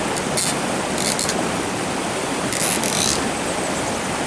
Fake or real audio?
real